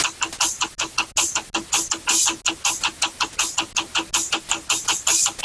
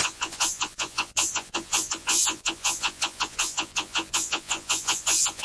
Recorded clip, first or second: first